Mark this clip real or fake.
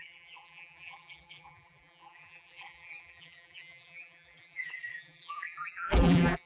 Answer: fake